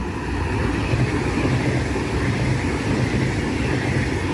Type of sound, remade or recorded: recorded